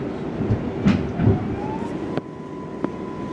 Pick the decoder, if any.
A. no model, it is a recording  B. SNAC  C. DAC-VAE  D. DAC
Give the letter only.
A